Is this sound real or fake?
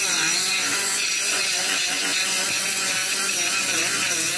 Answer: fake